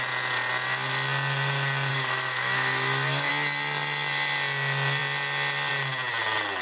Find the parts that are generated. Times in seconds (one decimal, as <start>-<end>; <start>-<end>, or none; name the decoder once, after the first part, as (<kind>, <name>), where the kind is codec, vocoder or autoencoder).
1.9-3.3 (autoencoder, DAC-VAE)